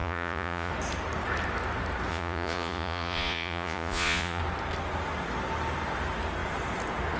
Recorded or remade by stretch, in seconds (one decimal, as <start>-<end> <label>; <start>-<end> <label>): 0.0-0.7 remade; 0.7-2.1 recorded; 2.1-4.4 remade; 4.4-7.2 recorded